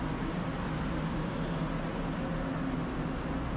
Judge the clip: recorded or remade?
recorded